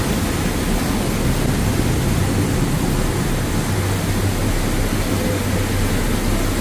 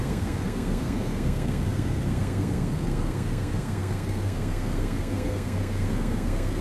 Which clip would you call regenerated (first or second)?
second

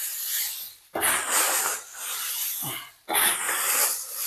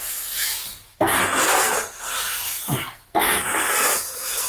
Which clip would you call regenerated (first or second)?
second